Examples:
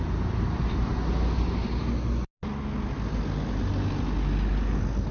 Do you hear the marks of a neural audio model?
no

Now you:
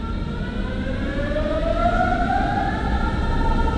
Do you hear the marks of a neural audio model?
no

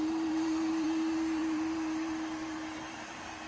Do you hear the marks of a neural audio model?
yes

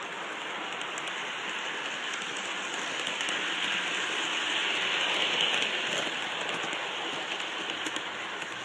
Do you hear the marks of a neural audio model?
no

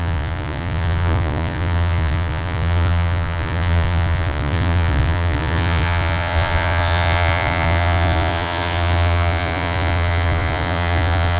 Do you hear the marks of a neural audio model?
yes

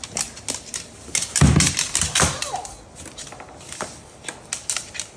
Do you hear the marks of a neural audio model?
no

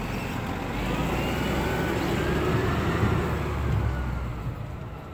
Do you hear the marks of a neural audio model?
no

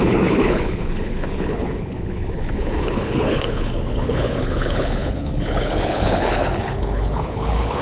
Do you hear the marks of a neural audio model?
yes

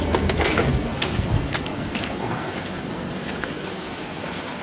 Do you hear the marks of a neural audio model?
yes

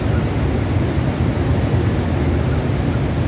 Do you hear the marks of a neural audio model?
no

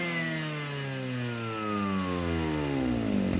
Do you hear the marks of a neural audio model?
no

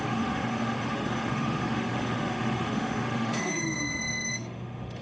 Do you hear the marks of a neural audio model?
yes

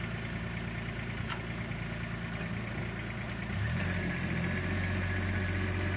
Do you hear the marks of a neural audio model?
no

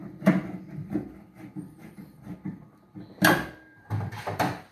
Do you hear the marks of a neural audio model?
yes